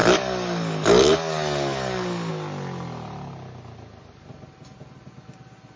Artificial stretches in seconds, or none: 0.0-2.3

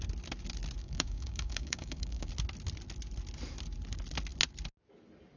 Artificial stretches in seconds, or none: 0.8-2.3

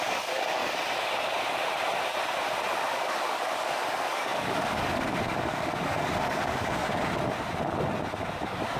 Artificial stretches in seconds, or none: 0.0-0.6; 2.9-6.8; 8.4-8.8

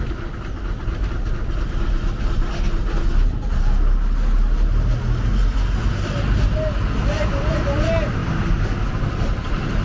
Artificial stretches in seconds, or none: none

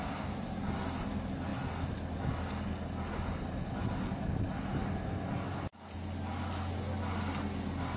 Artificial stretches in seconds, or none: none

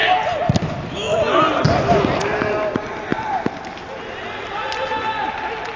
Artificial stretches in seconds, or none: none

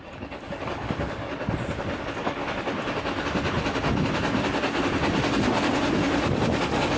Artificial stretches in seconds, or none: 0.0-1.3; 2.0-2.4; 6.6-7.0